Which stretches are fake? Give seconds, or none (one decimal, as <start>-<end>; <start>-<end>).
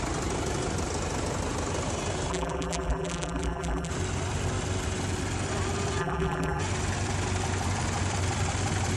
2.3-3.9; 6.0-6.6